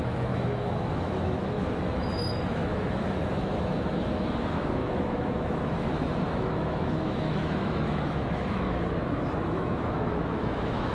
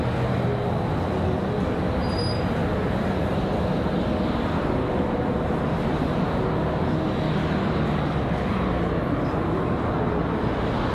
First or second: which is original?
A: second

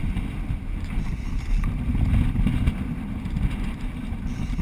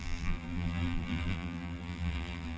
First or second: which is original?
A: first